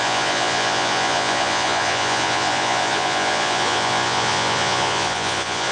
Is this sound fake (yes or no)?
yes